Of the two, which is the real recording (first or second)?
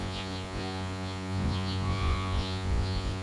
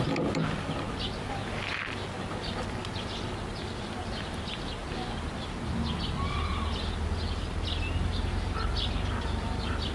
second